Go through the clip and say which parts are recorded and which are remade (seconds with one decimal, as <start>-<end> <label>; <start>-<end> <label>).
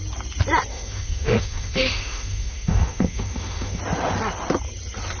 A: 0.0-0.7 recorded; 0.7-3.8 remade; 3.8-5.2 recorded